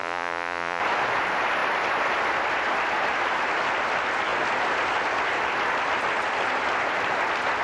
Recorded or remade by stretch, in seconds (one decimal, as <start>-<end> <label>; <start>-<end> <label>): 0.0-0.8 remade; 0.8-7.6 recorded